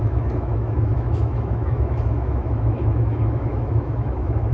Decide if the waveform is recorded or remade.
remade